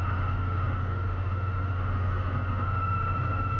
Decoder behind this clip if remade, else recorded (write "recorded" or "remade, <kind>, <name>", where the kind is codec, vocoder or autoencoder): remade, autoencoder, DAC-VAE